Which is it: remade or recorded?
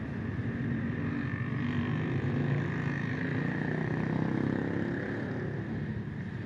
recorded